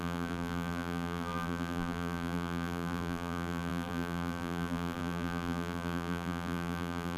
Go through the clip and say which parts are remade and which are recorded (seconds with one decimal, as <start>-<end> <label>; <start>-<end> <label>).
0.0-7.2 remade